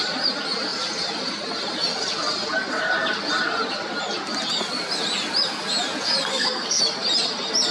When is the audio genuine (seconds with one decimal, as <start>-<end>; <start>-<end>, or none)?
0.0-6.3; 6.8-7.7